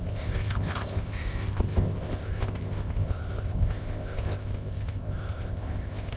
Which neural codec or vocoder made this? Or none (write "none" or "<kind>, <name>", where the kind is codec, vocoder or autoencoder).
codec, ZipCodec